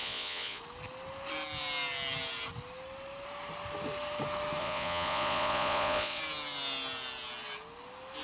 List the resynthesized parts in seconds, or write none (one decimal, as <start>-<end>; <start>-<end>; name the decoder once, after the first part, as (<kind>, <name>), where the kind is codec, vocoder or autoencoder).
0.0-0.6 (vocoder, Vocos); 4.6-6.2